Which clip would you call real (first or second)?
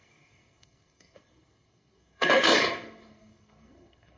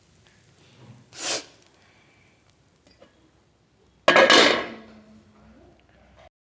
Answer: second